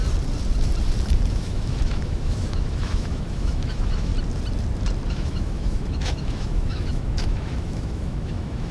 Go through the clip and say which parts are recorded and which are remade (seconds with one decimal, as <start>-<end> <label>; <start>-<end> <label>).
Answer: 0.0-1.3 recorded; 1.3-4.1 remade; 4.1-5.1 recorded; 5.1-8.7 remade